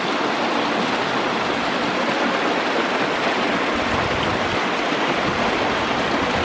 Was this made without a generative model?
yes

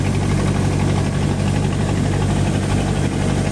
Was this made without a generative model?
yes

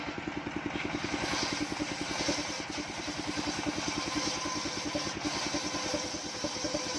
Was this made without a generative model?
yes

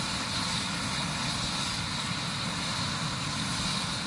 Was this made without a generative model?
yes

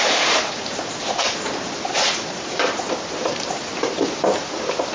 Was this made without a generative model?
no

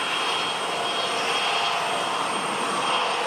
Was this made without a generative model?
yes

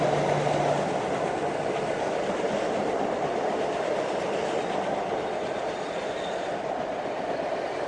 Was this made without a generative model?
yes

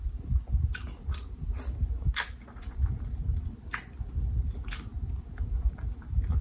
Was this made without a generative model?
yes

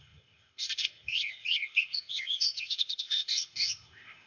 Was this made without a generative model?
no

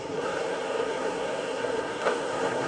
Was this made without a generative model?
no